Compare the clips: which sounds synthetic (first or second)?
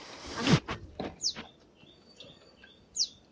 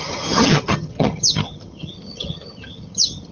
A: second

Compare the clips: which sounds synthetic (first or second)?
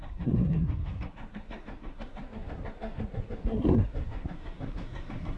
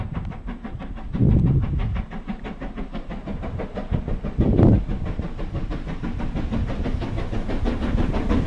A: first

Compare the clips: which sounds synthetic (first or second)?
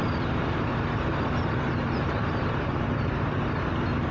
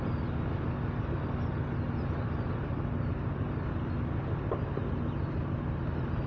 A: first